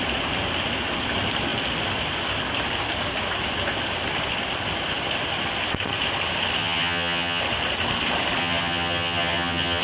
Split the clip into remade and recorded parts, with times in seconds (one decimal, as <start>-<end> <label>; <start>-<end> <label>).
0.0-6.6 recorded; 6.6-7.4 remade; 7.4-8.4 recorded; 8.4-9.8 remade